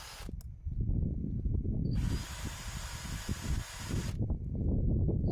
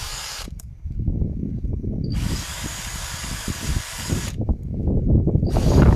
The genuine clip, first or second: first